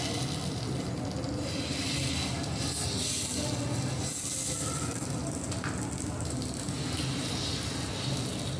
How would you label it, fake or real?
real